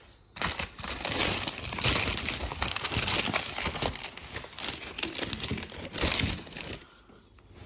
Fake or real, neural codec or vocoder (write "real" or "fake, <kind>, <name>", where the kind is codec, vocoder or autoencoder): real